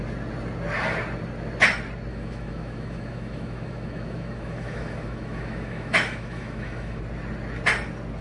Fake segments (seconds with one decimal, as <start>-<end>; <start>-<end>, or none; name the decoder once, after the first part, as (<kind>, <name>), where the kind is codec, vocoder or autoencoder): 2.1-7.0 (autoencoder, DAC-VAE)